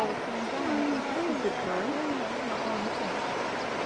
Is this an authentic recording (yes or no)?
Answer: yes